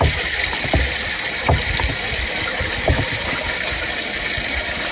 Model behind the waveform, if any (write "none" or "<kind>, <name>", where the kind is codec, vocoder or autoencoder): none